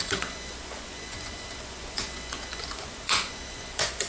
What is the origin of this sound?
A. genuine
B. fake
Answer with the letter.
B